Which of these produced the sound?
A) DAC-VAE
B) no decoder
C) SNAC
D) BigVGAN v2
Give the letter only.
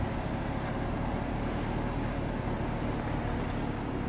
D